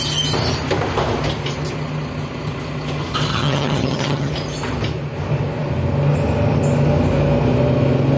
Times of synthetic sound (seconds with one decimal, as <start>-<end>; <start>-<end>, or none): 3.3-4.3

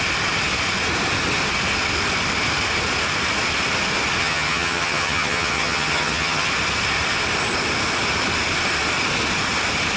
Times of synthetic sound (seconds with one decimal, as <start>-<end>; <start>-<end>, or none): 4.2-6.5

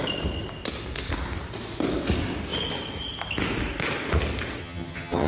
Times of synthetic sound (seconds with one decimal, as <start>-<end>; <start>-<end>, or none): 4.6-5.3

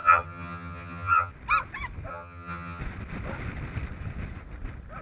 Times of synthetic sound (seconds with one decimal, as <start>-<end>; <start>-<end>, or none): 0.0-1.3; 2.1-2.8

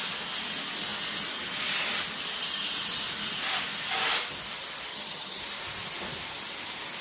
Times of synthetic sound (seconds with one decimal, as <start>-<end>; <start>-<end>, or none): 4.9-5.4

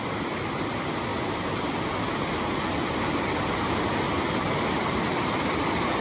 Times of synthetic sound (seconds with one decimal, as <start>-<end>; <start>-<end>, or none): none